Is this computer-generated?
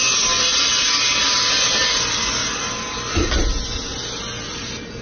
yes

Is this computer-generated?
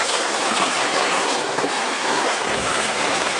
yes